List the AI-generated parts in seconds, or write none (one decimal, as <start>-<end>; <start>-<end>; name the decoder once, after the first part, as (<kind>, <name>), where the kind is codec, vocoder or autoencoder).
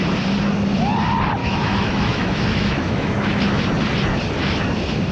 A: 1.4-3.6 (autoencoder, DAC-VAE)